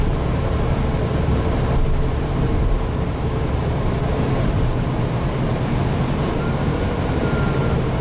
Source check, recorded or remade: remade